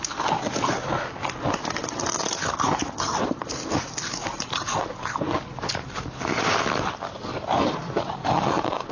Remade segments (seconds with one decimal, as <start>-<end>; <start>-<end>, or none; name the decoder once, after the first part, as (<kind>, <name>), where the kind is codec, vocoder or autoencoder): none